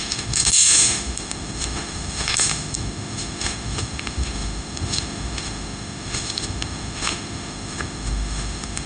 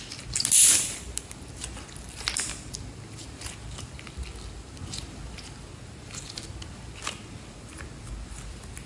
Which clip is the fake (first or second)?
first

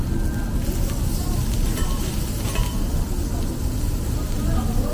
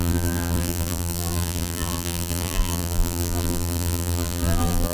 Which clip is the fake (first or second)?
second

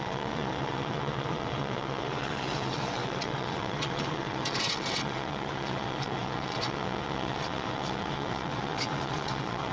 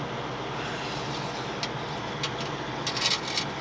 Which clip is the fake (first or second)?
first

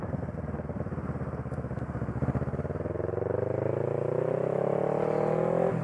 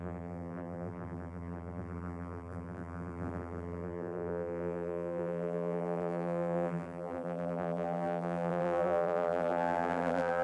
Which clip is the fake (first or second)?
second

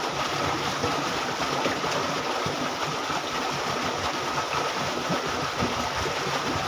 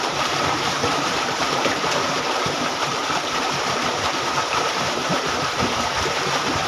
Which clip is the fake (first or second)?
second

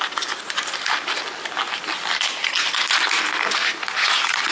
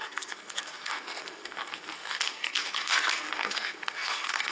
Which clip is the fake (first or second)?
second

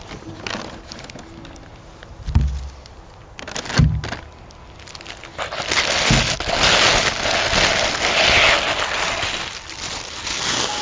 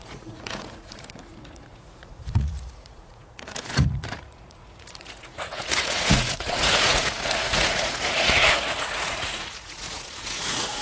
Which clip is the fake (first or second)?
second